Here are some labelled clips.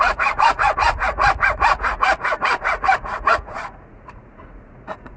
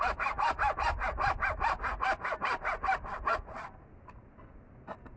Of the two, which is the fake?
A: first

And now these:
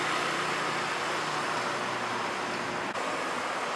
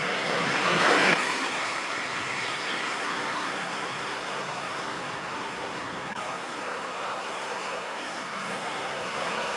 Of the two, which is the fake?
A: second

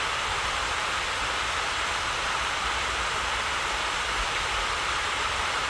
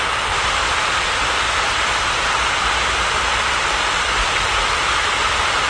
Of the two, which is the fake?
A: first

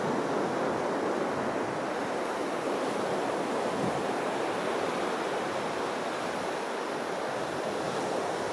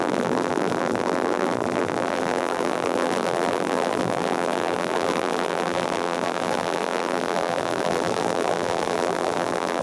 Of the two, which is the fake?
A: second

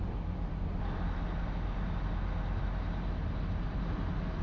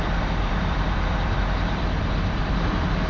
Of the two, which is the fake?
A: second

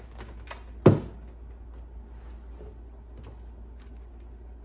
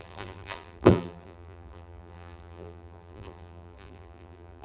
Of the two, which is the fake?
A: second